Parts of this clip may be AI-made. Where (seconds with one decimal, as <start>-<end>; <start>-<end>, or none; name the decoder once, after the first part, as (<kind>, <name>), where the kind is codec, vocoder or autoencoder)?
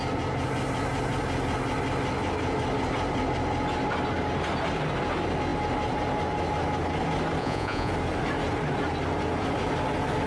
7.4-7.9 (vocoder, Vocos)